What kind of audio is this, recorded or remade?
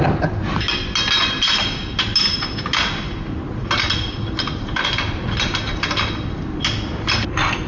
recorded